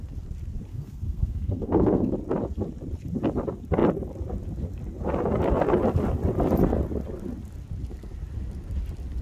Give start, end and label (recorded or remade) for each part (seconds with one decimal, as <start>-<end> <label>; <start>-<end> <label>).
0.0-0.7 recorded; 0.7-2.1 remade; 2.1-9.2 recorded